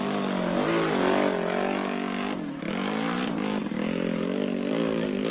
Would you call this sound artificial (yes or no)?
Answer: no